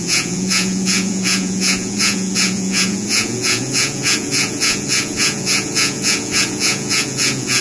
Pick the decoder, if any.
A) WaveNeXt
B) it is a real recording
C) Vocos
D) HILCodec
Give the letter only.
C